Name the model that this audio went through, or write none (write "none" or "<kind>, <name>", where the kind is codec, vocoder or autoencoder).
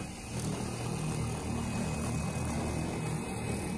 none